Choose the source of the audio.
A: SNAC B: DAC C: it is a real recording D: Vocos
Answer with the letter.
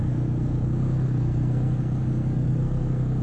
A